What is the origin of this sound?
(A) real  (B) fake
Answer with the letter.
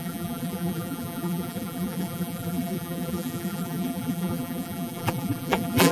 B